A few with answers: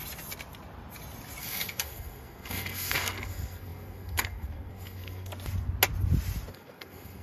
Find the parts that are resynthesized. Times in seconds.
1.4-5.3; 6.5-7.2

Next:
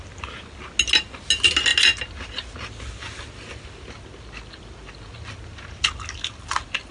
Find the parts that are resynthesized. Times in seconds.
none

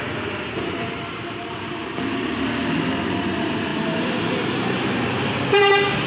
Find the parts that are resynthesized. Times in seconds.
0.0-1.8; 2.8-6.1

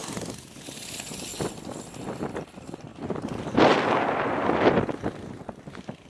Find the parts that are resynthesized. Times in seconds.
none

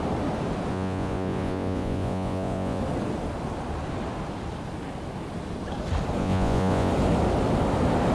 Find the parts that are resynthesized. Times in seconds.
0.7-2.8; 6.2-6.9